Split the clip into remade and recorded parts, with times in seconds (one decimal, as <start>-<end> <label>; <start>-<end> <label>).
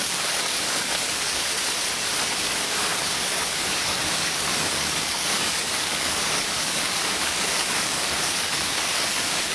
0.0-1.5 remade; 1.5-2.3 recorded; 2.3-9.5 remade